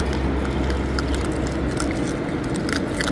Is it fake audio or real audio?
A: real